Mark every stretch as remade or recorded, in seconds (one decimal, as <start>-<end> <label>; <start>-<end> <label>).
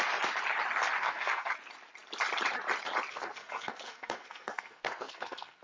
0.0-1.0 recorded; 1.0-1.5 remade; 1.5-3.1 recorded; 3.1-5.6 remade